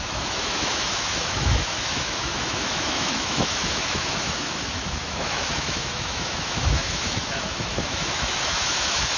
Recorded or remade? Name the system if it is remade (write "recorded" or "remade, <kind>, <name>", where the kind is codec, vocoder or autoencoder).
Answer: remade, autoencoder, DAC-VAE